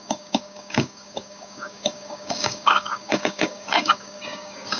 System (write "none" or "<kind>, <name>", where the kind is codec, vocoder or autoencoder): codec, DAC